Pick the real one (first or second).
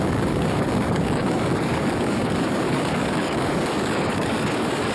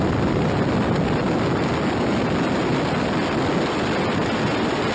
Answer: second